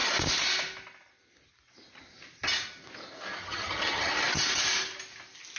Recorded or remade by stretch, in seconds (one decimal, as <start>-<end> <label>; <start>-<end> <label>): 0.0-3.4 recorded; 3.4-4.1 remade; 4.1-5.6 recorded